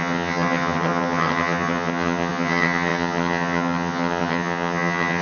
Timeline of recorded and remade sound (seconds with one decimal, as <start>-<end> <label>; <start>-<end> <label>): 0.0-5.2 remade